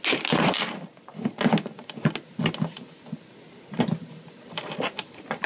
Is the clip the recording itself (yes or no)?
yes